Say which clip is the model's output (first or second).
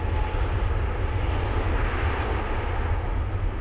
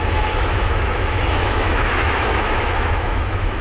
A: second